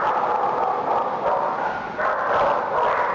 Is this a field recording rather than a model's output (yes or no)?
yes